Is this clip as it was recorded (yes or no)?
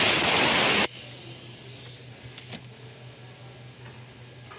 yes